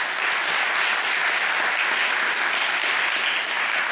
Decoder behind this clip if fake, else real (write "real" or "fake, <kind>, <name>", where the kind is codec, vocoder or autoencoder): real